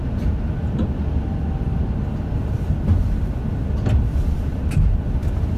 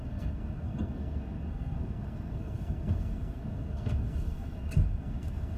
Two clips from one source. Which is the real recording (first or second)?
first